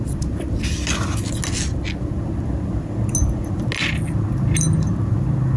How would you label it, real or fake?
real